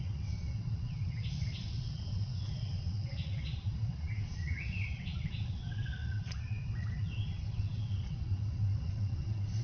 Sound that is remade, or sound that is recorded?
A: remade